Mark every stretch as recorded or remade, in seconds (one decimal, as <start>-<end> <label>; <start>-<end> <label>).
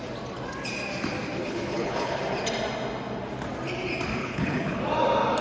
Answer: 0.0-1.4 recorded; 1.4-2.2 remade; 2.2-4.2 recorded; 4.2-4.8 remade; 4.8-5.4 recorded